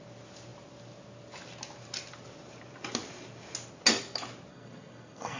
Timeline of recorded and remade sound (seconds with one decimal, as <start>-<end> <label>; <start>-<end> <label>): 0.0-4.5 recorded; 4.5-5.4 remade